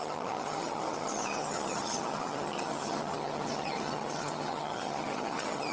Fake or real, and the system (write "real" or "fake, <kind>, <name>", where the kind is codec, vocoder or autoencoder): fake, vocoder, HiFi-GAN